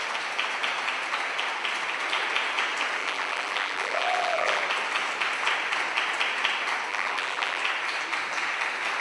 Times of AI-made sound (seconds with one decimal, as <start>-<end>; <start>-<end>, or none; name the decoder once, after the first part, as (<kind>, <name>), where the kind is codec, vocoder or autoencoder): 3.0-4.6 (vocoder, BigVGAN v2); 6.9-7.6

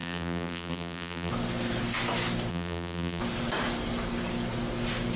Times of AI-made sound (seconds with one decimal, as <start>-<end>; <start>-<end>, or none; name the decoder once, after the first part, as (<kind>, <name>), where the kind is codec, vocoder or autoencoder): 0.0-1.3 (vocoder, BigVGAN v2); 2.5-3.2

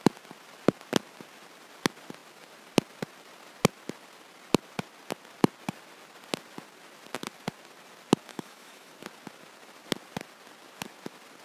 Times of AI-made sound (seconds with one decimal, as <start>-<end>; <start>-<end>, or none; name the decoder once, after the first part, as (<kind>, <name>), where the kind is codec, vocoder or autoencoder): 8.3-8.9 (autoencoder, DAC-VAE)